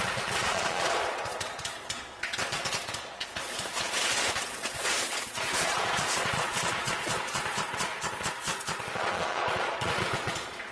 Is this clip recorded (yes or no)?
no